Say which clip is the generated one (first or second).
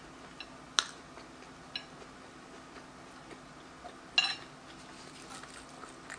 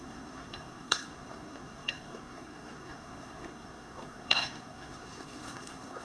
second